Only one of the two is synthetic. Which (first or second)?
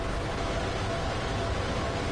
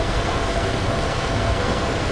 second